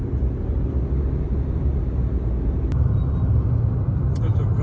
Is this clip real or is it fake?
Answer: real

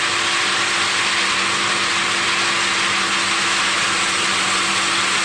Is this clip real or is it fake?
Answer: real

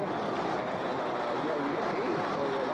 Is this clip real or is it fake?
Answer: real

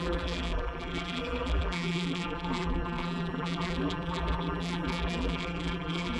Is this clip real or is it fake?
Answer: fake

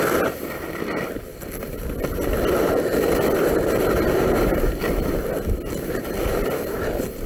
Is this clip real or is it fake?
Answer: real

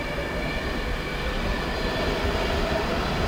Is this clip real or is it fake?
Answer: real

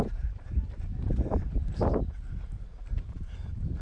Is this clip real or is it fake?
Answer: fake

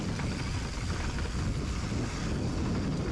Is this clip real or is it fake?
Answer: real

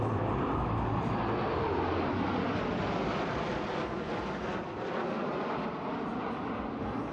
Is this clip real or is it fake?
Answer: real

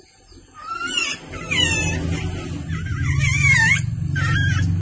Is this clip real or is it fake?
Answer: real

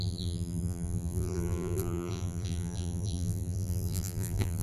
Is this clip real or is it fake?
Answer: fake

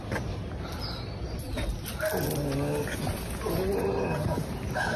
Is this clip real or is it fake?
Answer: real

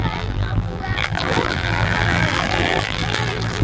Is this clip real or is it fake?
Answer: fake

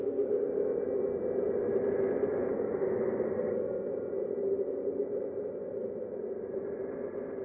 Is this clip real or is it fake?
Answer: real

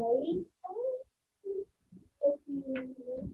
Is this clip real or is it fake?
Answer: fake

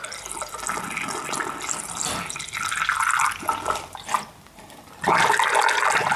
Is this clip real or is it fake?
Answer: fake